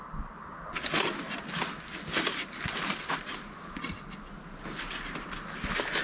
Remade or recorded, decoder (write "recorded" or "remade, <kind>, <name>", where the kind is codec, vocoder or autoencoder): recorded